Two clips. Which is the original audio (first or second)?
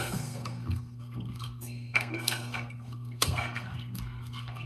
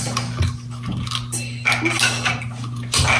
second